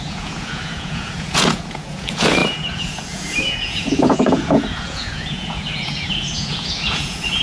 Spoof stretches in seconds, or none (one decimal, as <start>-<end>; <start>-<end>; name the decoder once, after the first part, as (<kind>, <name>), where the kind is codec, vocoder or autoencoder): 0.0-7.4 (vocoder, Vocos)

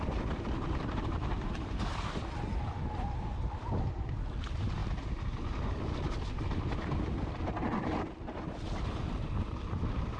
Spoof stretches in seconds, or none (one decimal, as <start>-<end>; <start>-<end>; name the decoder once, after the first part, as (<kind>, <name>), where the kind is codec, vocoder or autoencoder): 0.0-4.8 (vocoder, BigVGAN v2); 6.4-10.2

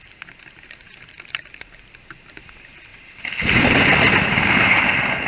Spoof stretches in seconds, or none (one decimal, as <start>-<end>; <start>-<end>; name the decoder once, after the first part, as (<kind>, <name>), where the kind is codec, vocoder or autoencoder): none

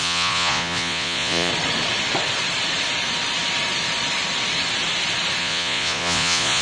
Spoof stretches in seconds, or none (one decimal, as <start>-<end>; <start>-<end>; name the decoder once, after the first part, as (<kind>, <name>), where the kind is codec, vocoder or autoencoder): 0.0-1.5 (vocoder, Vocos); 5.4-6.6

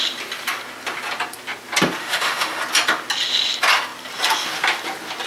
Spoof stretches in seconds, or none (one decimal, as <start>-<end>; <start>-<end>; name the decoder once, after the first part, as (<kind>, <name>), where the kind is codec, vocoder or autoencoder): 2.0-2.6 (autoencoder, DAC-VAE)

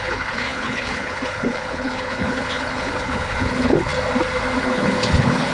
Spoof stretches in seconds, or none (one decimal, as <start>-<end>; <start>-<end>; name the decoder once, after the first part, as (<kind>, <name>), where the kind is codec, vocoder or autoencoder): 0.0-3.9 (codec, HILCodec); 4.6-5.5

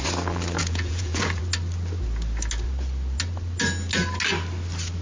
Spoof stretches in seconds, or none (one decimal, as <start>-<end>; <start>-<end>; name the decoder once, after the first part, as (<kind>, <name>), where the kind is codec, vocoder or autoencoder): 0.6-1.4 (vocoder, Vocos)